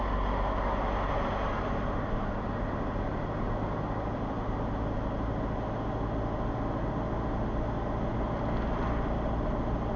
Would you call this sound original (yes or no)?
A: yes